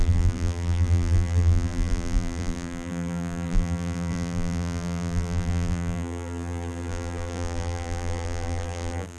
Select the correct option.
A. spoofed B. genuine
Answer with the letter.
A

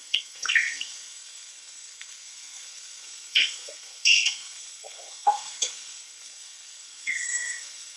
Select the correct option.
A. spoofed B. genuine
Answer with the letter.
A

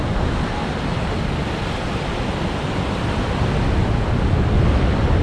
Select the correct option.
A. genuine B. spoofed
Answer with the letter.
A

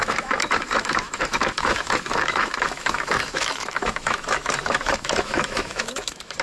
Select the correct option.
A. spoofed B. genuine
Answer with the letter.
A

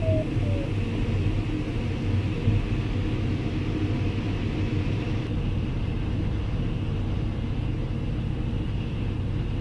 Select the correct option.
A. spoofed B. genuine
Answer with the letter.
B